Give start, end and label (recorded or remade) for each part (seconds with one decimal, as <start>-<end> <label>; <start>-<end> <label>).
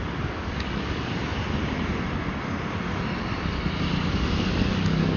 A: 0.0-1.1 remade; 1.1-4.1 recorded; 4.1-5.2 remade